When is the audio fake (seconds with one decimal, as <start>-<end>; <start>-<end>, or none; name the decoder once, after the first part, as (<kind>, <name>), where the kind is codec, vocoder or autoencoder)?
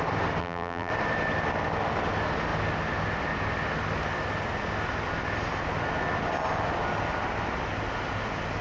0.4-0.9 (vocoder, BigVGAN v2)